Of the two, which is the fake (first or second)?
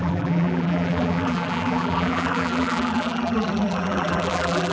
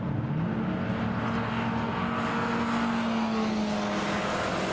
first